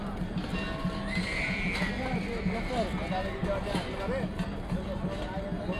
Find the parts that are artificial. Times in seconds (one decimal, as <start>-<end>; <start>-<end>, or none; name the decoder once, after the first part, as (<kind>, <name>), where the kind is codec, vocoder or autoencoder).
none